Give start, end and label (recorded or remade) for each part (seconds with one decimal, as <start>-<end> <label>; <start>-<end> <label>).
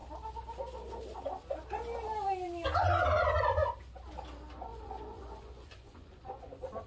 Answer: 0.0-4.7 recorded; 4.7-6.5 remade; 6.5-6.9 recorded